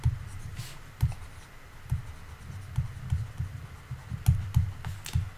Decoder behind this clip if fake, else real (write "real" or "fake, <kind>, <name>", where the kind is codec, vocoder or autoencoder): real